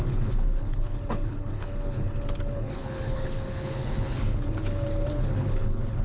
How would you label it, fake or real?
fake